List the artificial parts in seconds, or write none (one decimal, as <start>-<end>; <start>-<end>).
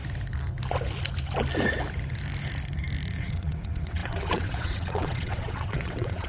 3.2-6.3